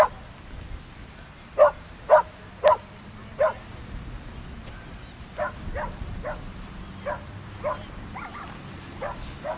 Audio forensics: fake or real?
real